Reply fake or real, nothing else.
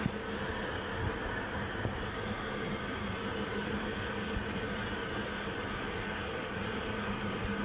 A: real